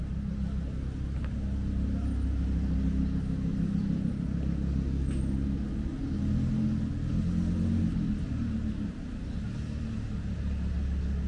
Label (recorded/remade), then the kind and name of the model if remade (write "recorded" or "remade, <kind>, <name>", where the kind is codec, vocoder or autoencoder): recorded